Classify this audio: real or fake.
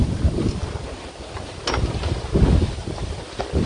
real